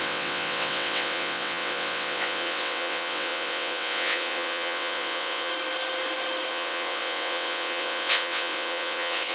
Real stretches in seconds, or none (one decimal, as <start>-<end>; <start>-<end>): 5.5-6.5